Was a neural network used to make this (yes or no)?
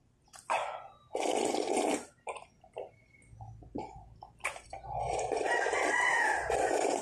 yes